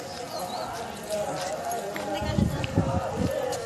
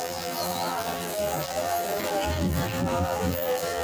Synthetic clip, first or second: second